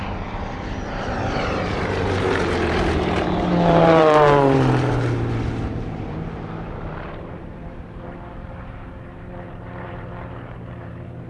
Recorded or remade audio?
remade